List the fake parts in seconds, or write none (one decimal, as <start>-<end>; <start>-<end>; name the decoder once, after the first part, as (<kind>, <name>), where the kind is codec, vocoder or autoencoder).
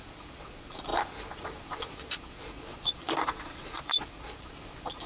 0.0-5.1 (vocoder, Vocos)